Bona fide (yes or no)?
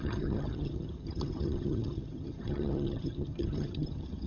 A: no